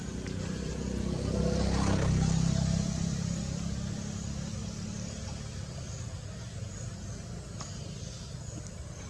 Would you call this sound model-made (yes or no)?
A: no